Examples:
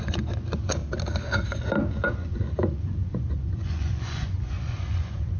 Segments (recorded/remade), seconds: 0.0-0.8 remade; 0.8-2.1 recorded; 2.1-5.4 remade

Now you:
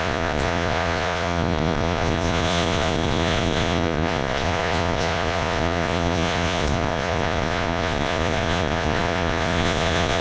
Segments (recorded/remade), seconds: 0.0-10.2 remade

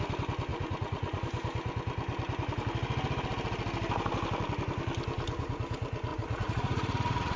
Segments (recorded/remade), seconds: 0.0-0.5 recorded; 0.5-1.2 remade; 1.2-6.1 recorded; 6.1-7.4 remade

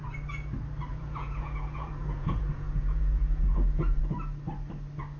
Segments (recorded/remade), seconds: 0.0-0.9 recorded; 0.9-4.0 remade; 4.0-5.2 recorded

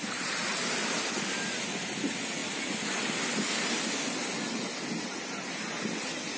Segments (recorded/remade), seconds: 0.0-6.4 recorded

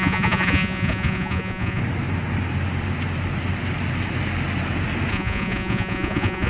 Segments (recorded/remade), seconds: 0.0-1.8 remade; 1.8-5.1 recorded; 5.1-6.5 remade